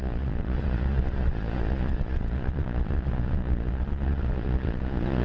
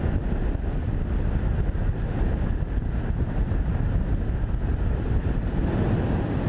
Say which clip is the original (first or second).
second